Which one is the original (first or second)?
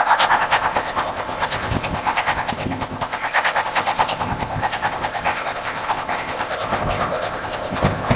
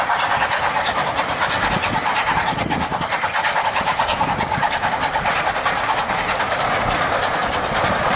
second